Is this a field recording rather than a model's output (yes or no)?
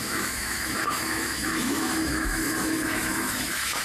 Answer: no